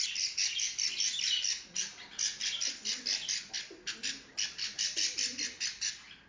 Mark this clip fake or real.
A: real